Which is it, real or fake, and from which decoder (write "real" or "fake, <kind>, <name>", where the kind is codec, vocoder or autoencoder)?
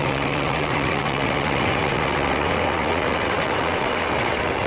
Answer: fake, vocoder, WaveNeXt